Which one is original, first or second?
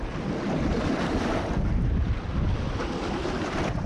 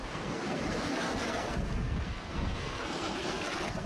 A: first